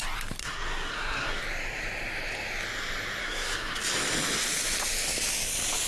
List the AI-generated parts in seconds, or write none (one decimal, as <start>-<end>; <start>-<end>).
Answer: 0.4-1.4; 3.2-3.8